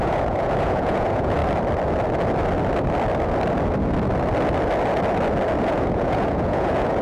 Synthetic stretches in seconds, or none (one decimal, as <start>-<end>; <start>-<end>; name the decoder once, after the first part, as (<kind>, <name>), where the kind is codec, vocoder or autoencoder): 0.0-1.4 (vocoder, Vocos); 5.6-7.0